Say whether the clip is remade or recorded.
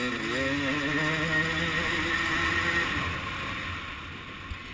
recorded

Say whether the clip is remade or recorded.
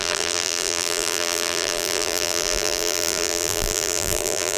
remade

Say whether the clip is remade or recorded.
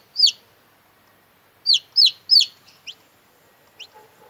recorded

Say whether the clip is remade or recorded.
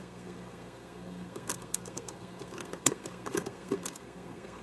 remade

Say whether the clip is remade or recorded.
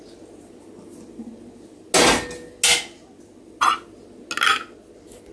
recorded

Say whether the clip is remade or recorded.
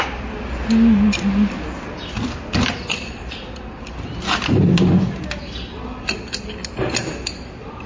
recorded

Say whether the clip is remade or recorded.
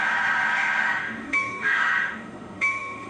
remade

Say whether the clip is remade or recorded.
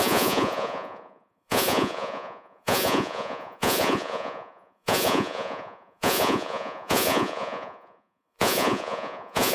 remade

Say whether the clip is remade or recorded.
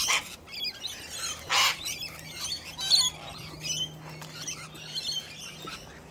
recorded